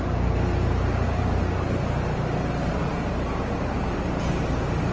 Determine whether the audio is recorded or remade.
remade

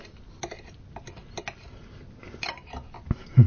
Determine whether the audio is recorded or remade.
recorded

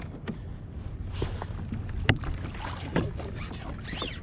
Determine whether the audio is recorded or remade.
recorded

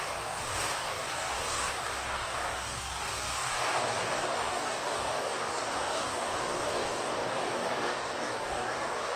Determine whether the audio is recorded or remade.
remade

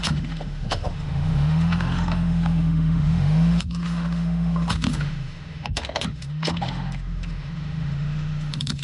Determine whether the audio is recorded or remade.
remade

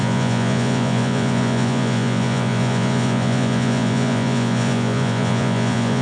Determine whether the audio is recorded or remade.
remade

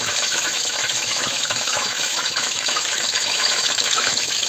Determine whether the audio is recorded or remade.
remade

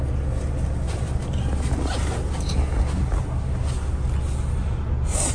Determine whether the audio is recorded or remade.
recorded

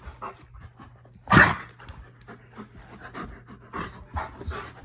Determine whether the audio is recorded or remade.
recorded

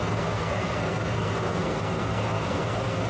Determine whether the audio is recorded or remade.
remade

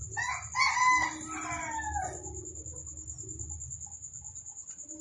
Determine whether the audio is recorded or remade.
recorded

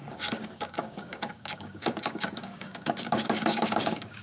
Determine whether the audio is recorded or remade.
remade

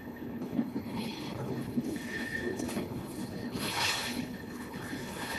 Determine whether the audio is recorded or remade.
remade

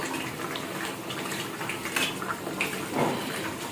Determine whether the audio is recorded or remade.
recorded